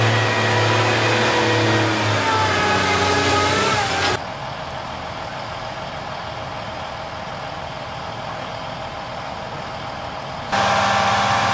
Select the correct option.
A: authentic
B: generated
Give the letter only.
A